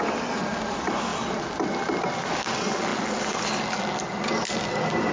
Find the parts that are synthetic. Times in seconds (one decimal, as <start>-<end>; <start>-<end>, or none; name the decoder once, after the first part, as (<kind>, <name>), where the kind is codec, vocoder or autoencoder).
none